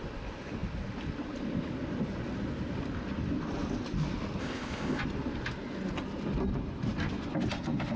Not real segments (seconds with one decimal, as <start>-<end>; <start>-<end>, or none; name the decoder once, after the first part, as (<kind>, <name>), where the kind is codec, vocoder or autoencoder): 4.4-5.0 (codec, ZipCodec)